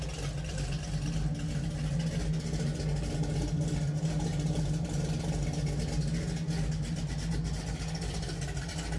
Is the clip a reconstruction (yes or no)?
no